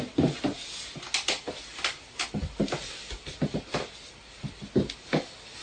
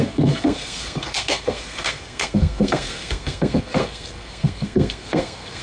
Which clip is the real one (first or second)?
first